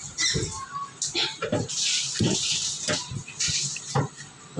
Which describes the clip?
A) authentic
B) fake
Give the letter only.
A